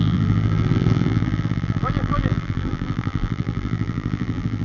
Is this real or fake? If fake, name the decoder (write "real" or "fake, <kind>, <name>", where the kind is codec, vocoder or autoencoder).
fake, vocoder, BigVGAN v2